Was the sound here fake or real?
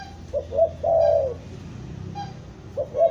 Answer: real